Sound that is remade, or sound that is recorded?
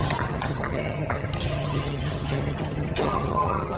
remade